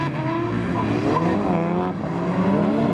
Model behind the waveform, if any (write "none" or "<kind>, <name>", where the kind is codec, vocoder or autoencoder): none